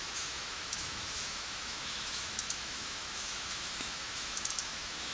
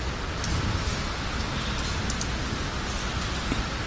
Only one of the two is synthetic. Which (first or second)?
first